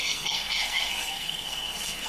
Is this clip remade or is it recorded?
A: remade